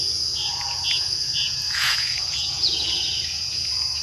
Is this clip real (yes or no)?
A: no